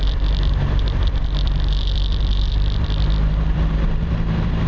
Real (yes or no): no